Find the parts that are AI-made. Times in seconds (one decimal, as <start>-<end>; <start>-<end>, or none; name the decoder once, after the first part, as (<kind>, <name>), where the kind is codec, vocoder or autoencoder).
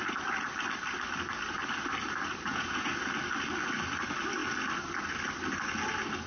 2.5-3.0 (vocoder, Vocos)